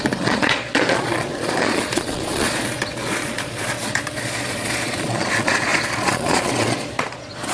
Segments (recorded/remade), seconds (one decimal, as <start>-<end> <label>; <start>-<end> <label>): 0.0-7.5 remade